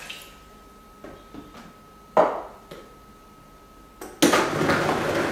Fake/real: real